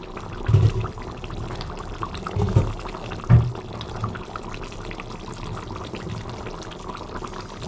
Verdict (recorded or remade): recorded